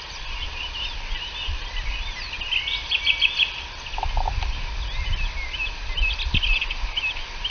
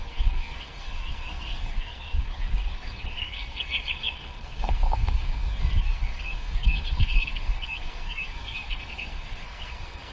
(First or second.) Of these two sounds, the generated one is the second